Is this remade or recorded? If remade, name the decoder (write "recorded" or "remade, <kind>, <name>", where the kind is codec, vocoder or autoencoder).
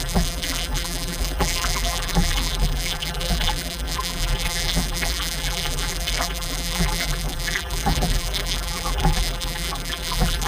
remade, vocoder, BigVGAN v2